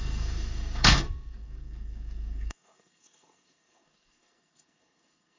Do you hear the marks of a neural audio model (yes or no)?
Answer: yes